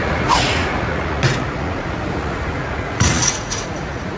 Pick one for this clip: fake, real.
fake